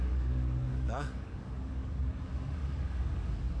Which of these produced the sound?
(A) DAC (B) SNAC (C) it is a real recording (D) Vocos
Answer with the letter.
A